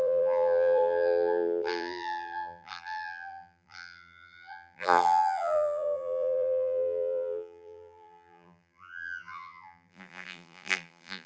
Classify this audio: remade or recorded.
remade